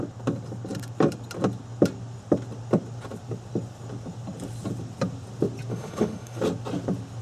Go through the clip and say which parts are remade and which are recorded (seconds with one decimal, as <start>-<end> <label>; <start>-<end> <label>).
0.0-5.7 recorded; 5.7-6.4 remade; 6.4-7.2 recorded